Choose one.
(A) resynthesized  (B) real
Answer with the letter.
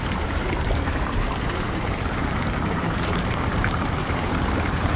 A